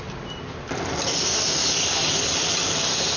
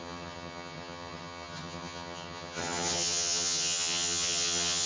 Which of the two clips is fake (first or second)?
second